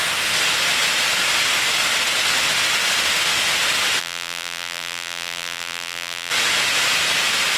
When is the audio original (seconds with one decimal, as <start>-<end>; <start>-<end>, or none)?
0.0-4.0; 6.3-7.6